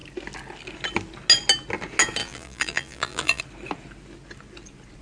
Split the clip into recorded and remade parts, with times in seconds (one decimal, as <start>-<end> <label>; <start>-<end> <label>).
0.0-2.2 recorded; 2.2-3.4 remade; 3.4-5.0 recorded